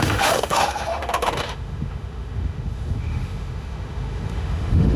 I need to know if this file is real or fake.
fake